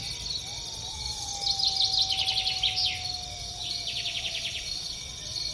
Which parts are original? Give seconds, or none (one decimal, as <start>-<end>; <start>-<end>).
0.0-0.8; 1.3-3.4